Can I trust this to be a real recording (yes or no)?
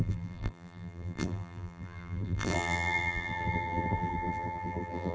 no